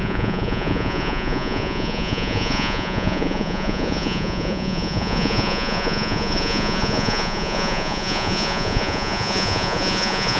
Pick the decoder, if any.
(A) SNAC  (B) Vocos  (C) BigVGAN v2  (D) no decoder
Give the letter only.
B